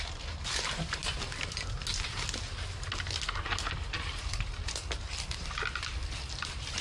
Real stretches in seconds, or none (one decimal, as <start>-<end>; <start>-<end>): 0.0-6.8